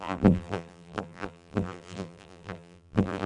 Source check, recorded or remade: remade